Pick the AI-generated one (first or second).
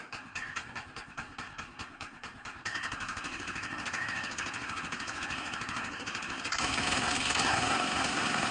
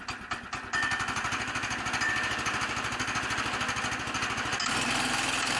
first